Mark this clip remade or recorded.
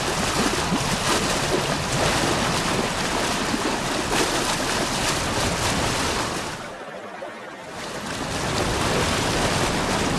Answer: recorded